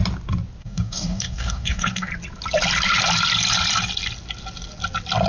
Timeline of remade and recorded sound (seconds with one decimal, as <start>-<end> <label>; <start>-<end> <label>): 0.0-0.6 recorded; 0.6-2.1 remade; 2.1-5.3 recorded